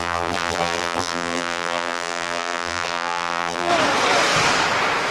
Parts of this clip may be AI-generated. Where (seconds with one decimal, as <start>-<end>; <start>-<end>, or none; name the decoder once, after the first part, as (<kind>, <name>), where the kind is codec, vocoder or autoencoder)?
0.0-3.7 (vocoder, BigVGAN v2)